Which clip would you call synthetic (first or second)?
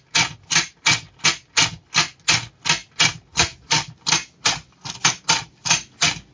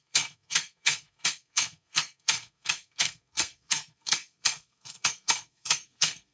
second